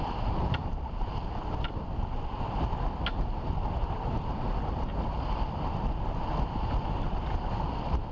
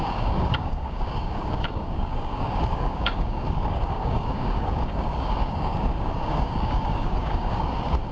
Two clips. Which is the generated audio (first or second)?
second